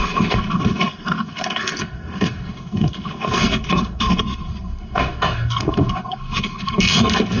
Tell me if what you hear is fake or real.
fake